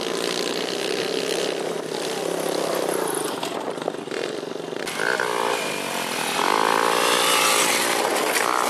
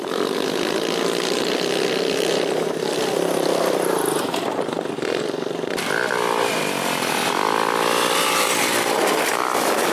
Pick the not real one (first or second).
second